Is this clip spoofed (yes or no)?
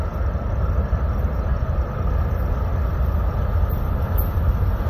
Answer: no